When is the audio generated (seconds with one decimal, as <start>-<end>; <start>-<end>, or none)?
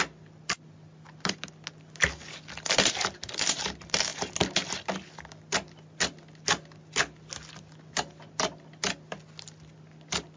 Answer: none